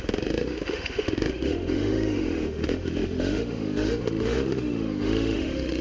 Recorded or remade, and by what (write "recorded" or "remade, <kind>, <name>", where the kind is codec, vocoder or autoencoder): remade, autoencoder, DAC-VAE